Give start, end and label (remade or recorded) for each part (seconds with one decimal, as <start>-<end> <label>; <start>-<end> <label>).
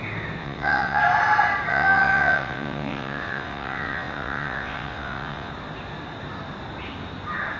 0.0-0.4 recorded; 0.4-1.0 remade; 1.0-1.7 recorded; 1.7-5.5 remade; 5.5-7.6 recorded